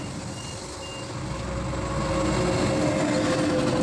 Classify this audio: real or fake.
real